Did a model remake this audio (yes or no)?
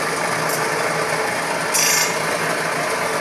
no